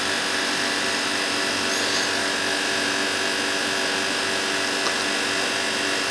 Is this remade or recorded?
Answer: recorded